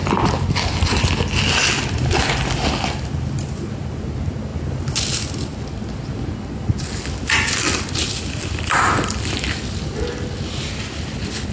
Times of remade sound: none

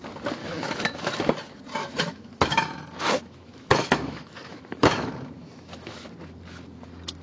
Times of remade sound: 0.4-1.2 (autoencoder, DAC-VAE); 1.8-6.1

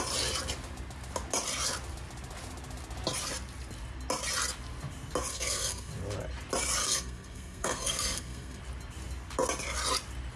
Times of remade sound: 5.3-5.9 (codec, SNAC); 6.8-8.6

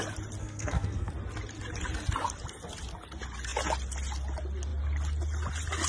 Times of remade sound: 0.4-1.1 (codec, SNAC)